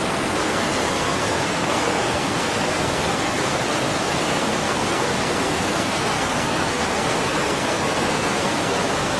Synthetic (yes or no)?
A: yes